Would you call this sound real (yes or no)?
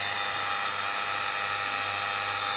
yes